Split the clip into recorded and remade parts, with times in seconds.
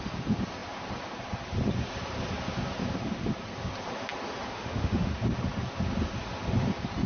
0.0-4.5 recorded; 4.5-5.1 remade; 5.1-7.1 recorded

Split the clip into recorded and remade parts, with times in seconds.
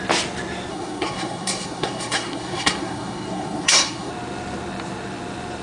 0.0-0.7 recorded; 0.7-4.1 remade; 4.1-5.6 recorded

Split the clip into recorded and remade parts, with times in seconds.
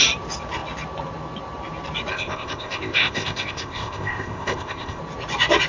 0.0-2.1 recorded; 2.1-5.0 remade; 5.0-5.7 recorded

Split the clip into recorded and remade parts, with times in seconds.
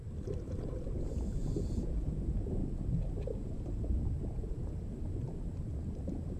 0.0-1.4 recorded; 1.4-2.1 remade; 2.1-6.4 recorded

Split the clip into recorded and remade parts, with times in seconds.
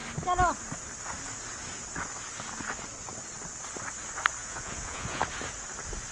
0.0-4.4 recorded; 4.4-5.2 remade; 5.2-6.1 recorded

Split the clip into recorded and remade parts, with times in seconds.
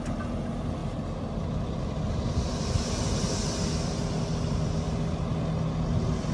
0.0-6.3 recorded